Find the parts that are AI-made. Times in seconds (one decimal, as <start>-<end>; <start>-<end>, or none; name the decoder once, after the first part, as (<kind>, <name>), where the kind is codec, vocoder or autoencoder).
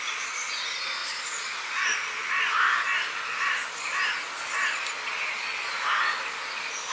none